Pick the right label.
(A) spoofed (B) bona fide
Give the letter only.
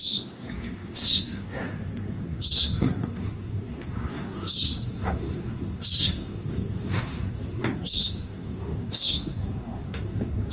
A